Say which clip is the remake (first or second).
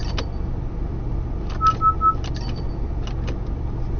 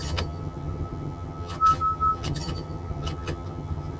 second